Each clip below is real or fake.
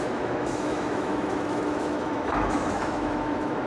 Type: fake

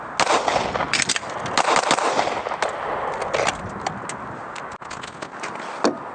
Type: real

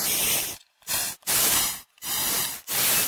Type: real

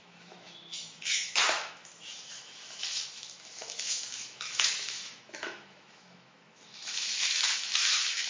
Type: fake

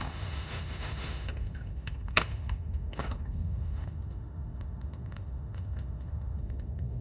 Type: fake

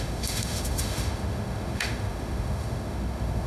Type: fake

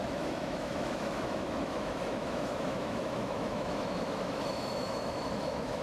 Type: fake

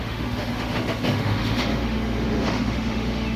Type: fake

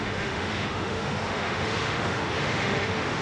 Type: fake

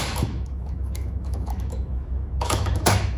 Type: fake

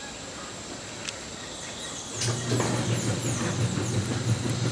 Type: real